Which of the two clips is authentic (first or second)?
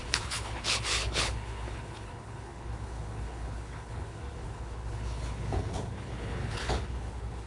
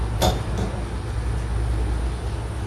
second